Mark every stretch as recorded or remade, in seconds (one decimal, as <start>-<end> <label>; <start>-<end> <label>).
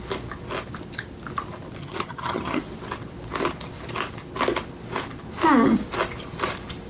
0.0-1.8 recorded; 1.8-2.6 remade; 2.6-6.9 recorded